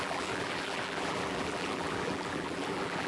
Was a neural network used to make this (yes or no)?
yes